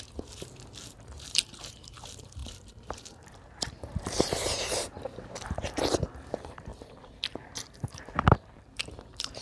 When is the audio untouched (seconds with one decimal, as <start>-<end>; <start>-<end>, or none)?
none